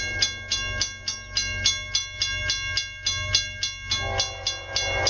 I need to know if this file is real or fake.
real